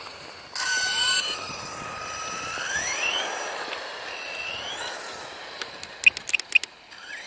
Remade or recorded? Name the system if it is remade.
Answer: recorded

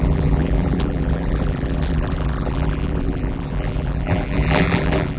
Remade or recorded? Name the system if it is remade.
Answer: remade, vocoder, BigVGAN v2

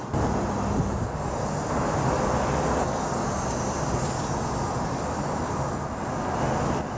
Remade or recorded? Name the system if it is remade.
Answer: recorded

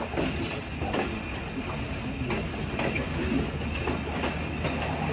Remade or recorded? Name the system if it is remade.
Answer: recorded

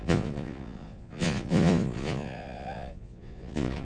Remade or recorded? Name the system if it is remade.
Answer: remade, vocoder, Vocos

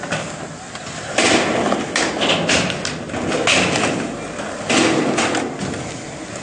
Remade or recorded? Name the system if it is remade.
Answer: recorded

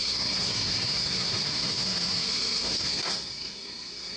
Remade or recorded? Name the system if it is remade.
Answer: remade, codec, SNAC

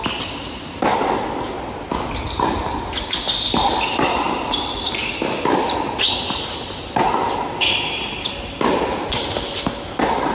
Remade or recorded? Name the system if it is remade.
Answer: recorded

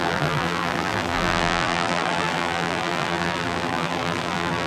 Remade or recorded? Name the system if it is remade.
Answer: remade, vocoder, BigVGAN v2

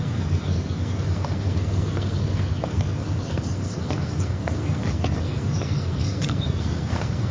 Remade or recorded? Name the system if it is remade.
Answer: remade, codec, SNAC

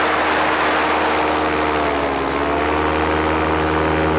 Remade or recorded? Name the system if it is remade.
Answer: recorded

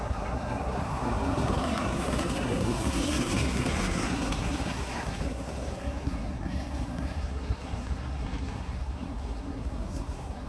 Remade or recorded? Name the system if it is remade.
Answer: remade, codec, SNAC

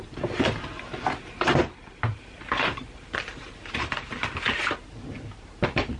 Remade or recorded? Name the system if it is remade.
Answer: remade, vocoder, BigVGAN v2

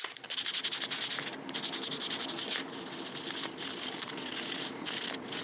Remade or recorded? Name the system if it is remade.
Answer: recorded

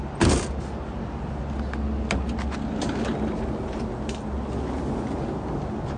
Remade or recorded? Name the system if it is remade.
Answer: recorded